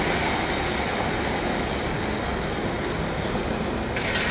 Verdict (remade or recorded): recorded